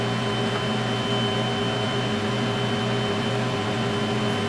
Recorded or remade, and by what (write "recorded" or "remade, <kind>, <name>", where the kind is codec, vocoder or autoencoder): recorded